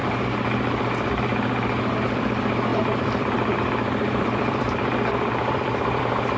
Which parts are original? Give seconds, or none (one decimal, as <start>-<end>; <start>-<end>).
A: 0.0-2.7; 6.0-6.4